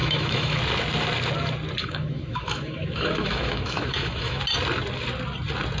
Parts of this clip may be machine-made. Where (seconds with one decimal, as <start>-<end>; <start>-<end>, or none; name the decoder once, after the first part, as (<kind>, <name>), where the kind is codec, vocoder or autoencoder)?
0.0-0.6 (autoencoder, DAC-VAE); 1.8-4.4